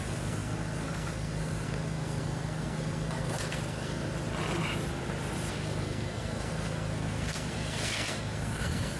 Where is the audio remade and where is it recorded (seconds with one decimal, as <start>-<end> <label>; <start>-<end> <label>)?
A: 0.0-4.0 remade; 4.0-5.5 recorded; 5.5-9.0 remade